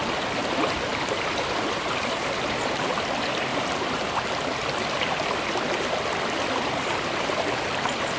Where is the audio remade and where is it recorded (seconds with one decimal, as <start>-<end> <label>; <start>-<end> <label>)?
0.0-0.9 recorded; 0.9-2.9 remade; 2.9-3.5 recorded; 3.5-4.1 remade; 4.1-8.2 recorded